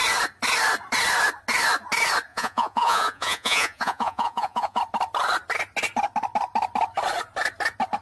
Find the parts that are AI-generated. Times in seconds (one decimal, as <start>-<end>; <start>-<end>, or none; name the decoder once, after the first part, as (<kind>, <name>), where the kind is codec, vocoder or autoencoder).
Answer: 2.3-4.8 (vocoder, Vocos)